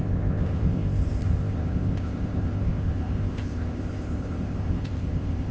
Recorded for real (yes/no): no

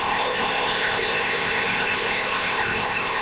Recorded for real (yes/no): no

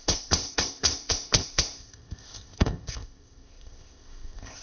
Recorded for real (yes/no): no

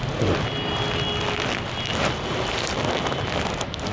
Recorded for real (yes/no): yes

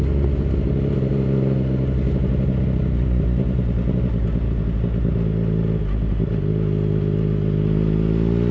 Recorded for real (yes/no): yes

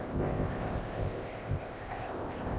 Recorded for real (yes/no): no